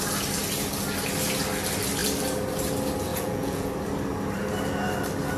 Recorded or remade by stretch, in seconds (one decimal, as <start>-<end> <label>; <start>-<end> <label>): 0.0-3.1 recorded; 3.1-3.7 remade; 3.7-5.4 recorded